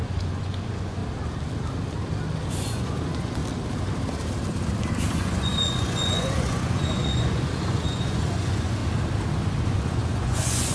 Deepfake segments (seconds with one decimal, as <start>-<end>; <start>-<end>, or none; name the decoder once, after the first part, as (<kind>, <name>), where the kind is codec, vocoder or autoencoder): 0.0-1.0 (vocoder, Vocos); 2.5-3.4; 5.1-8.8; 9.7-10.7